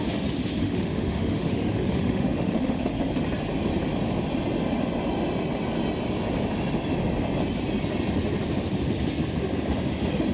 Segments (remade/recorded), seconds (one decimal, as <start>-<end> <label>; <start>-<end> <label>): 0.0-0.6 recorded; 0.6-2.9 remade; 2.9-10.3 recorded